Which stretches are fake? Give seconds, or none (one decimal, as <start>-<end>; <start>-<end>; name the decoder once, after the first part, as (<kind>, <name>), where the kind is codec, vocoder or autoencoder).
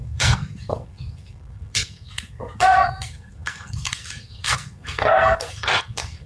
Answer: 0.0-6.3 (codec, SNAC)